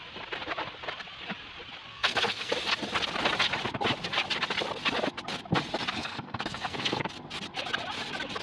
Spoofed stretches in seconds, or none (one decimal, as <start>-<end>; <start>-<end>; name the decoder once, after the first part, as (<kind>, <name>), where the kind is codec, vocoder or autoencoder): 1.9-2.5 (codec, SNAC); 6.0-7.1